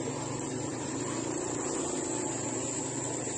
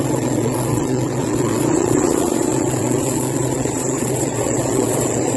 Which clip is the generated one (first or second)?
second